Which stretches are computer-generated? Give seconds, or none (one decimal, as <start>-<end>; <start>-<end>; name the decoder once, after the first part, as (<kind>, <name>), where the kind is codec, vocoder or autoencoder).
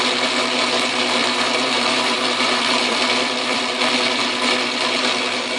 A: 1.2-3.6 (vocoder, BigVGAN v2)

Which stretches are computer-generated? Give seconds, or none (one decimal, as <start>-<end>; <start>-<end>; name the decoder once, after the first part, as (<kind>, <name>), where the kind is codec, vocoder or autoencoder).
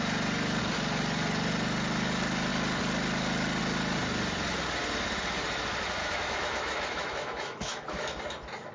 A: 6.0-8.2 (autoencoder, DAC-VAE)